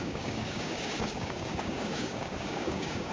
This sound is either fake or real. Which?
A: fake